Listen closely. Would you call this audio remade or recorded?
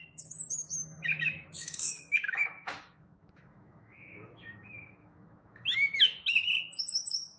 remade